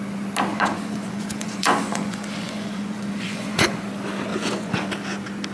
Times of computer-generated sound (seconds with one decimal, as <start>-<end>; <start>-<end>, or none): 0.5-3.8; 4.3-4.9